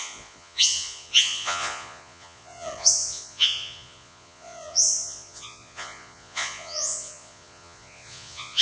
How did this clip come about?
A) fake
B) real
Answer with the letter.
A